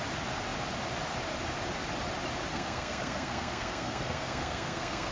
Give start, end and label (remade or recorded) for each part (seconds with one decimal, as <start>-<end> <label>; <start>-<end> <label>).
0.0-2.5 recorded; 2.5-5.1 remade